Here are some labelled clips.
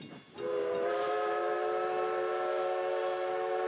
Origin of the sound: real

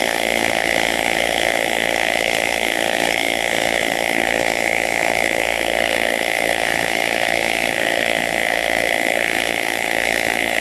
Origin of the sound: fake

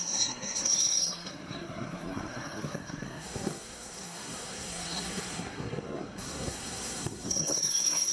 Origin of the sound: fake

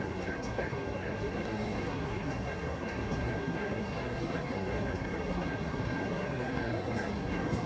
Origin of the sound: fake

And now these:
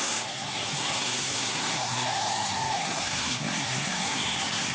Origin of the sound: fake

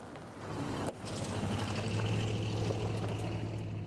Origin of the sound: real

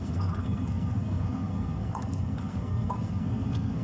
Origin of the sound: fake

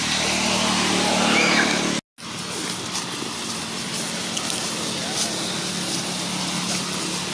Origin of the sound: real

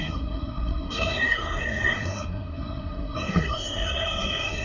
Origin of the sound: fake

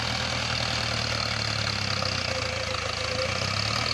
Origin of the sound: real